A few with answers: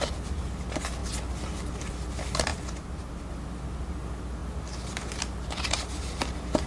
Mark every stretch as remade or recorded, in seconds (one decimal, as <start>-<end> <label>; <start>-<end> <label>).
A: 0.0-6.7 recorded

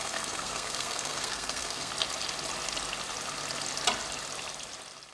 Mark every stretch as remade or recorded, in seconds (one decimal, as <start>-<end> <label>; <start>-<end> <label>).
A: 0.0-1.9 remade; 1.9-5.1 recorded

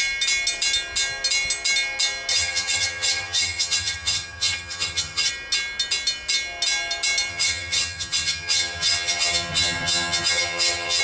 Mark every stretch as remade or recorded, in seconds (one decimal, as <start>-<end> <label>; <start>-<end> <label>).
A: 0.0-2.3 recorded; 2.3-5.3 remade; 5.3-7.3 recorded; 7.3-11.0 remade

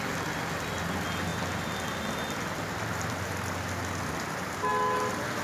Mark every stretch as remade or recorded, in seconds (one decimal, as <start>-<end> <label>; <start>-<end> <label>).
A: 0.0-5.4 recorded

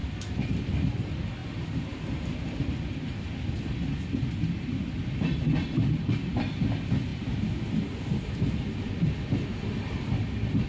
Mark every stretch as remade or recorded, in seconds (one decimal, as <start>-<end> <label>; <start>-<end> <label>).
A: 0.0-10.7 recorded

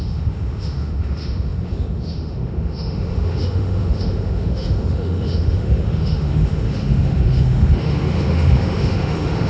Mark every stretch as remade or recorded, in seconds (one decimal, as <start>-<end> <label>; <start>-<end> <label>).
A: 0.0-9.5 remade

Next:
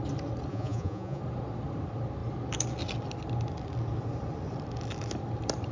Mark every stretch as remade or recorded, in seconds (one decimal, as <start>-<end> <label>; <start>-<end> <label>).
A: 0.0-0.5 recorded; 0.5-1.2 remade; 1.2-5.7 recorded